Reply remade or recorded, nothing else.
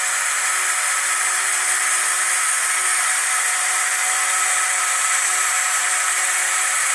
remade